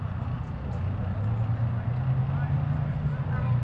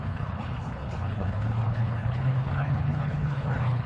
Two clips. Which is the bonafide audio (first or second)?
first